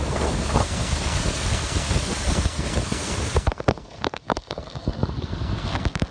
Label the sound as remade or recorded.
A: remade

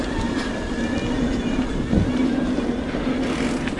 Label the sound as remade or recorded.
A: recorded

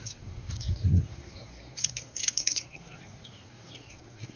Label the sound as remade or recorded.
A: remade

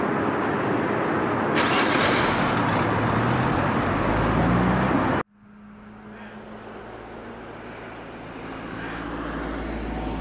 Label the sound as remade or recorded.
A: recorded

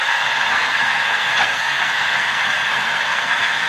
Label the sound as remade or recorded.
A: remade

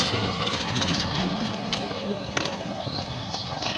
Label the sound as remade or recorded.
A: remade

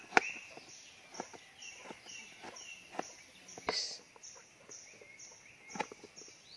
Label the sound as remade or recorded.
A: recorded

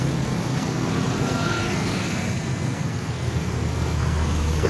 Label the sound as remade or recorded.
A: remade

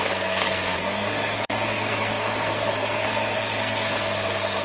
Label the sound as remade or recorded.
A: remade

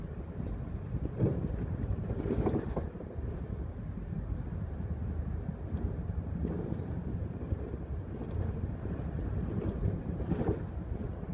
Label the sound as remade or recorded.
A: recorded